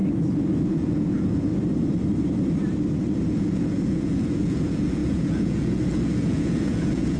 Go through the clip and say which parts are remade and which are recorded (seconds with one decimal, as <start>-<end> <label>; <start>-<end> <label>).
0.0-0.7 recorded; 0.7-1.5 remade; 1.5-3.3 recorded; 3.3-7.2 remade